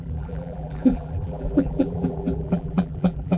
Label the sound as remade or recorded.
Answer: remade